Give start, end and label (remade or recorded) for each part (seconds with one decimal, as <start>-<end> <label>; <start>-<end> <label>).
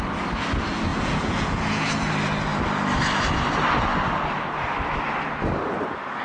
0.0-0.9 recorded; 0.9-2.1 remade; 2.1-6.2 recorded